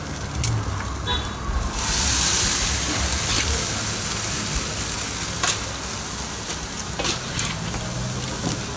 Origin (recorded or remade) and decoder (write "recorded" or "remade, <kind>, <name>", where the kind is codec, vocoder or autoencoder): recorded